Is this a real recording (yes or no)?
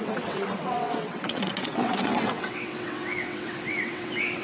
no